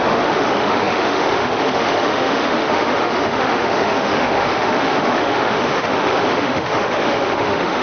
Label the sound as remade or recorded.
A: remade